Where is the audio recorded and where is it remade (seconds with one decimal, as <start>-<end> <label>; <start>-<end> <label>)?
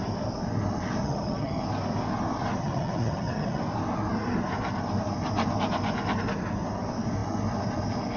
0.0-1.0 recorded; 1.0-1.6 remade; 1.6-2.6 recorded; 2.6-3.6 remade; 3.6-8.2 recorded